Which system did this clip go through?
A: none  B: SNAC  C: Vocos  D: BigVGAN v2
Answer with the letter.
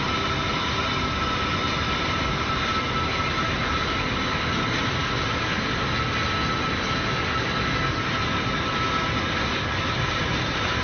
A